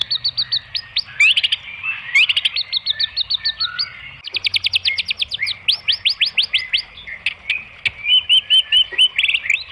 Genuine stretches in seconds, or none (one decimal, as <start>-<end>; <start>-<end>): 0.0-9.7